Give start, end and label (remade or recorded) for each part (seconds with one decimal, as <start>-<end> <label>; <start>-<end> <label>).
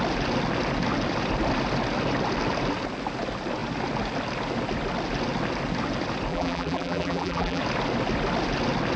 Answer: 0.0-6.3 recorded; 6.3-7.6 remade; 7.6-9.0 recorded